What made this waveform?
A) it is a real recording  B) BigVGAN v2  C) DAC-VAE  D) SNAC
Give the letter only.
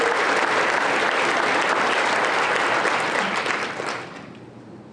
A